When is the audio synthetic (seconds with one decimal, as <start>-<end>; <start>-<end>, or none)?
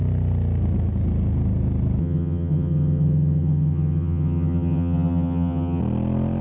2.0-5.8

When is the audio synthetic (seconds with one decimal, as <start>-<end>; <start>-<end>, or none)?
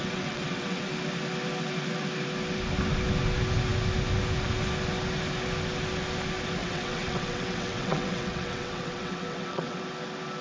0.0-0.9; 6.6-9.8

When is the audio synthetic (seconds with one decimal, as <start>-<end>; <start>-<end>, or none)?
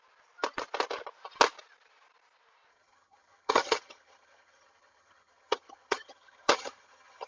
2.7-7.3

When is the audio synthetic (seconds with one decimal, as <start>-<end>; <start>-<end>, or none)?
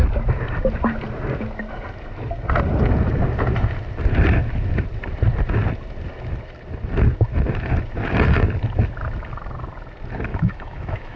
10.3-11.2